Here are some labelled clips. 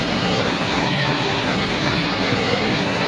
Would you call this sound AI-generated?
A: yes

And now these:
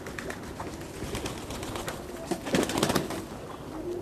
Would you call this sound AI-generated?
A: no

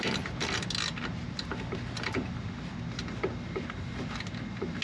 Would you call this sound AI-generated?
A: no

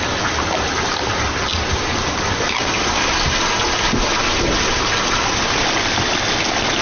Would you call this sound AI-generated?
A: no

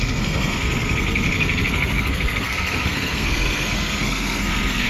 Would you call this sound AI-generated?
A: yes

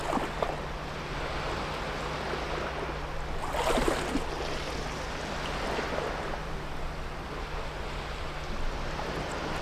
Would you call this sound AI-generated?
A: no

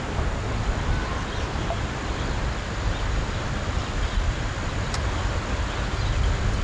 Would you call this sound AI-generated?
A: no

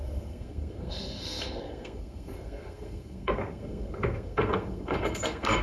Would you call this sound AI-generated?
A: yes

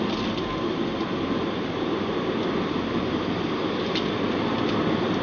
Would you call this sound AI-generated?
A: no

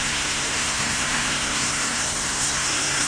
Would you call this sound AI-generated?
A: yes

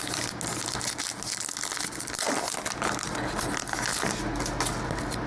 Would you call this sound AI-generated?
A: no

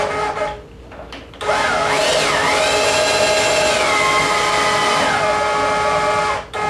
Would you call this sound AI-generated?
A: no